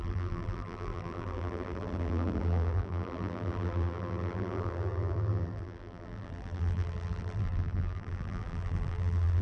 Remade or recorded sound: remade